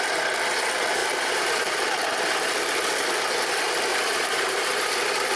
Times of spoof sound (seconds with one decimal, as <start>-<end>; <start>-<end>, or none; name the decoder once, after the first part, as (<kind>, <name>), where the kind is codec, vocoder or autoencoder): 1.0-2.6 (vocoder, BigVGAN v2); 3.9-5.0